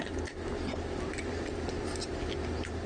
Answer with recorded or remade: recorded